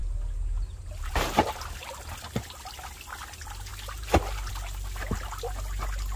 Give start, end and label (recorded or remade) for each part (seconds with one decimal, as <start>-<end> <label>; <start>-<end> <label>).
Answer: 0.0-6.2 recorded